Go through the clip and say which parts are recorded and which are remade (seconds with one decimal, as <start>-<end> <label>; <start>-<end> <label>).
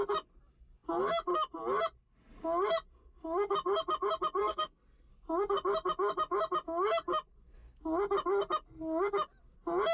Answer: 0.0-4.4 recorded; 4.4-5.1 remade; 5.1-9.9 recorded